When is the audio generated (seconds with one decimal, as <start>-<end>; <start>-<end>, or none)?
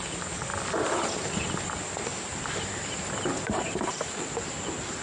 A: none